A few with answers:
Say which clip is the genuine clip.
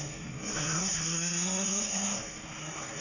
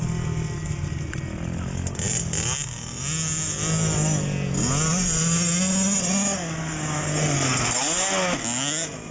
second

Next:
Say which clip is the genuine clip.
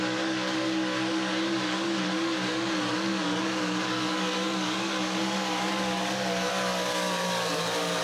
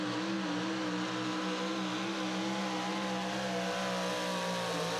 second